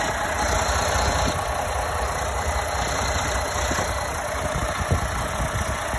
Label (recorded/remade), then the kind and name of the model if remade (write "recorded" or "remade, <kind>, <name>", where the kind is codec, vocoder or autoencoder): recorded